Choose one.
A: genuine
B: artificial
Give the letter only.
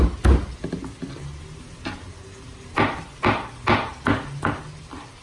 A